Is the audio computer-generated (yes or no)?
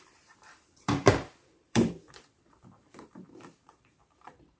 yes